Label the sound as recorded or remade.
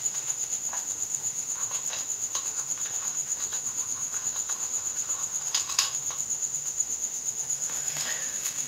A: remade